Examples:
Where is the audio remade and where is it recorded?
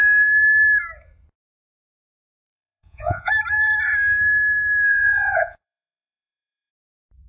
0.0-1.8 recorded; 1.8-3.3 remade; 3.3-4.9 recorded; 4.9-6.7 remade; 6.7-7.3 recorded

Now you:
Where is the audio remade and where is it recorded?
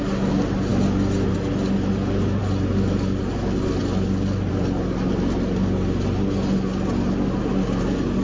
0.0-8.2 recorded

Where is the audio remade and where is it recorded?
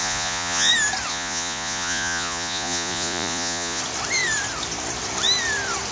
0.0-0.7 remade; 0.7-1.1 recorded; 1.1-3.8 remade; 3.8-5.9 recorded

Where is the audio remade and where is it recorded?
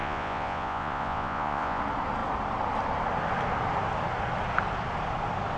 0.0-1.8 remade; 1.8-5.6 recorded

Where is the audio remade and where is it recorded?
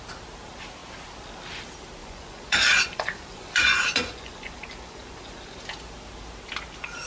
0.0-2.0 recorded; 2.0-5.6 remade; 5.6-7.1 recorded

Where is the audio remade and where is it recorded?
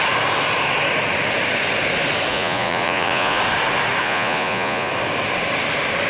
0.0-2.3 recorded; 2.3-3.4 remade; 3.4-4.0 recorded; 4.0-4.9 remade; 4.9-6.1 recorded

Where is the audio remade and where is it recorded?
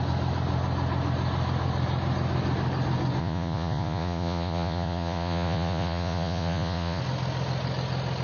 0.0-3.2 recorded; 3.2-7.0 remade; 7.0-8.2 recorded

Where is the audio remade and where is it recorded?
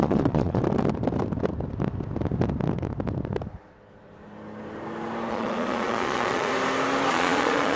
0.0-0.6 remade; 0.6-5.3 recorded; 5.3-6.5 remade; 6.5-7.1 recorded; 7.1-7.8 remade